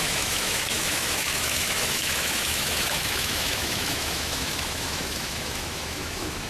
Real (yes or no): no